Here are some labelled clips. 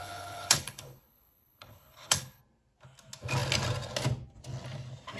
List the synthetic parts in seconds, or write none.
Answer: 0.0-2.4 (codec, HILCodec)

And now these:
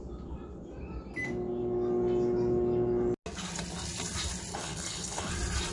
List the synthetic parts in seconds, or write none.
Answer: 4.5-5.3 (codec, HILCodec)

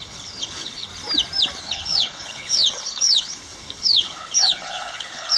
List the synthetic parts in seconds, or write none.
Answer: 0.0-0.9 (codec, HILCodec); 1.6-5.4

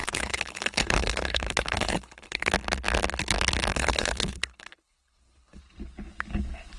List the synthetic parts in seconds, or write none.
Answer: 0.0-2.5 (codec, HILCodec); 3.7-5.6

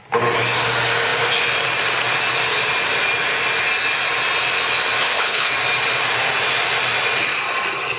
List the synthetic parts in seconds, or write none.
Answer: 5.0-5.5 (codec, HILCodec)

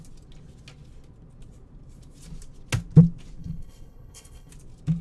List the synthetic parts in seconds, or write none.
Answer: 3.4-4.5 (codec, HILCodec)

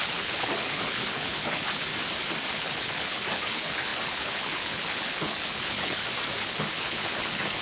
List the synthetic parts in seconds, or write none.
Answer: 0.0-1.9 (codec, HILCodec); 2.5-6.0; 6.5-7.6

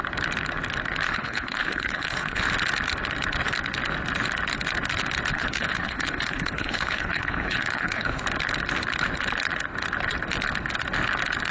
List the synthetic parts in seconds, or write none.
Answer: 1.1-2.4 (codec, HILCodec); 5.3-8.2